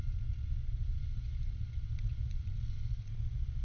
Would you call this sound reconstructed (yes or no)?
yes